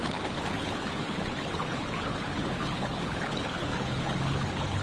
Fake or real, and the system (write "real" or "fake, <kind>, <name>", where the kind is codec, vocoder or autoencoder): fake, codec, HILCodec